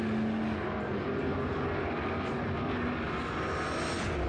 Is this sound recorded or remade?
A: recorded